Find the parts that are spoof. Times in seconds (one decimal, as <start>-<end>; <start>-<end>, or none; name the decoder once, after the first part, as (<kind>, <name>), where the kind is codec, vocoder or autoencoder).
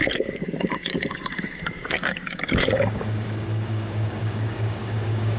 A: 0.0-5.4 (codec, DAC)